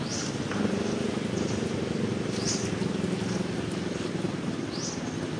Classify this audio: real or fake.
real